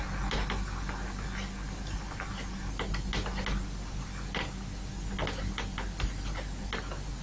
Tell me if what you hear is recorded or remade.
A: recorded